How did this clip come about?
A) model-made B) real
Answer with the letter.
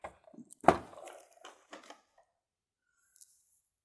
B